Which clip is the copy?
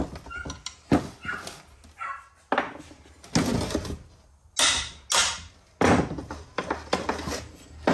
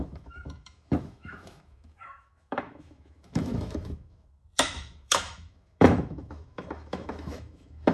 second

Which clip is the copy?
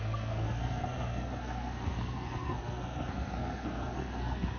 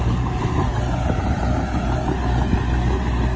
first